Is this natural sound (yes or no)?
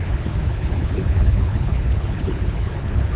no